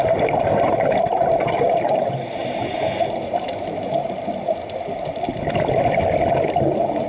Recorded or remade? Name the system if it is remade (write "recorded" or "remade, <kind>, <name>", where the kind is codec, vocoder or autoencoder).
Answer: recorded